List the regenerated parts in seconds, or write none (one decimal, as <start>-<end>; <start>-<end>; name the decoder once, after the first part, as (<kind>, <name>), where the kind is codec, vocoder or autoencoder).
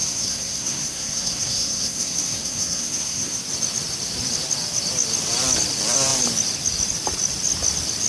0.0-3.4 (codec, SNAC)